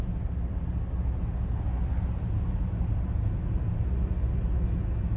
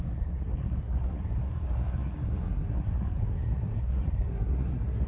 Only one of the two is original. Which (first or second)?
first